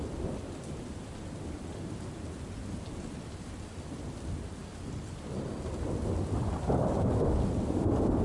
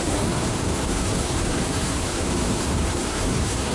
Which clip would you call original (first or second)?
first